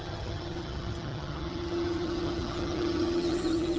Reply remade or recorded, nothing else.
remade